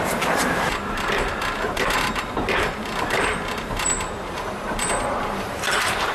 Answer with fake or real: fake